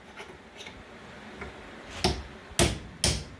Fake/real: real